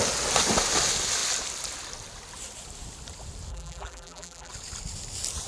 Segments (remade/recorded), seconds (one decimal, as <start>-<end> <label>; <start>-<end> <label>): 0.0-3.5 recorded; 3.5-4.5 remade; 4.5-5.5 recorded